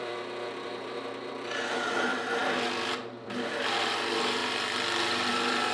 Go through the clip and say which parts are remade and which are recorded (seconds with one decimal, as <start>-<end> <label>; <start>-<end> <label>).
0.0-4.4 remade; 4.4-5.3 recorded; 5.3-5.7 remade